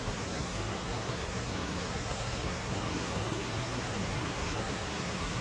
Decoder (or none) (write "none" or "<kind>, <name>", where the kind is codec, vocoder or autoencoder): codec, SNAC